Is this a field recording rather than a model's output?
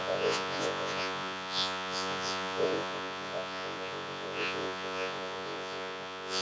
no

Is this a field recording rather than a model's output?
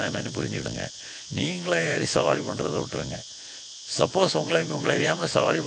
no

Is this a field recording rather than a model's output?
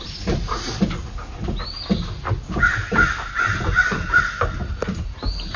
yes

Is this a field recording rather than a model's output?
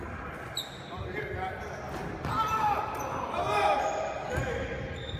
yes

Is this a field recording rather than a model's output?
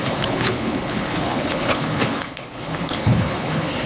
no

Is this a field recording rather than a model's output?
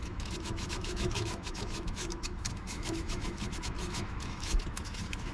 no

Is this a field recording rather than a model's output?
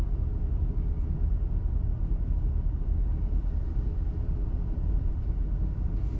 yes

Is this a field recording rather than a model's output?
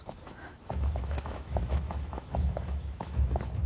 no